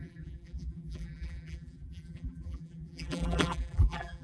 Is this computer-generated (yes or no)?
yes